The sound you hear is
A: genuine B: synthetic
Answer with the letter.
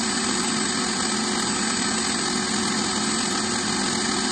A